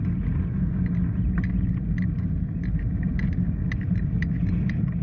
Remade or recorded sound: recorded